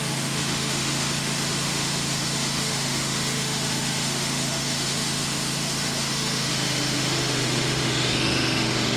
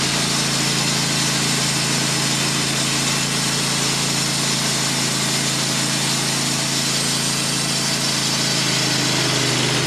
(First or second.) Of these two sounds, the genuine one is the second